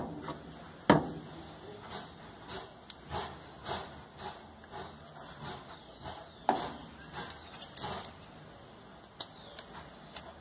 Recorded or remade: recorded